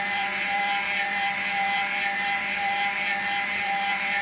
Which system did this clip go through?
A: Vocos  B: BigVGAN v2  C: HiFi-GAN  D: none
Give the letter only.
B